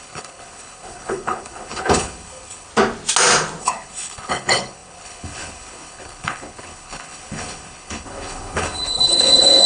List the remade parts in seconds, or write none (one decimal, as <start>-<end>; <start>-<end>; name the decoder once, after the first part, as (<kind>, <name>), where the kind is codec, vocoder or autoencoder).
0.0-2.7 (codec, HILCodec); 3.6-9.7